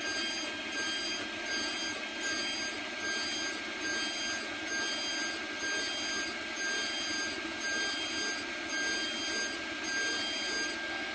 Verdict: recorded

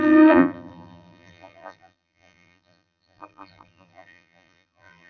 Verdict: remade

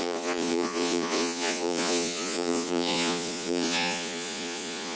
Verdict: remade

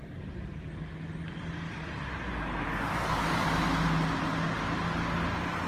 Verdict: recorded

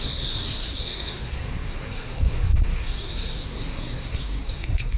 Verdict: remade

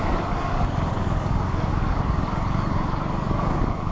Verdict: remade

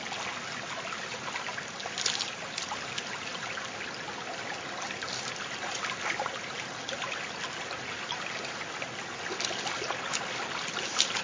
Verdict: recorded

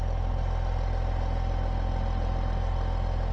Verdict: recorded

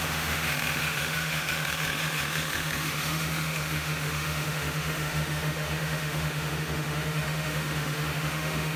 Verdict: remade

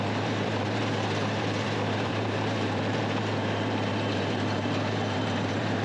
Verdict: remade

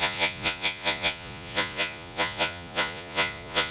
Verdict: remade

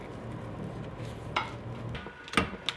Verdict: recorded